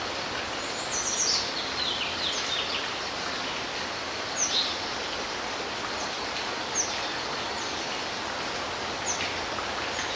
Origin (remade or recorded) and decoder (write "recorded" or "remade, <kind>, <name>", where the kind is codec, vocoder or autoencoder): recorded